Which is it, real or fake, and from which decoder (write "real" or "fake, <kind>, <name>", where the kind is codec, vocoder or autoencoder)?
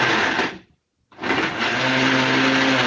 real